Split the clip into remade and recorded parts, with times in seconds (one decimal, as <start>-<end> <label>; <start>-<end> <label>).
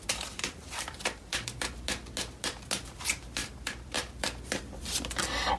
0.0-3.4 recorded; 3.4-4.8 remade; 4.8-5.6 recorded